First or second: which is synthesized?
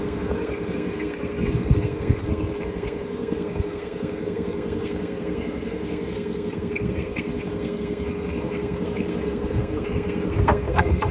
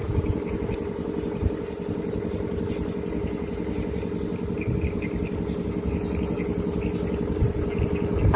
first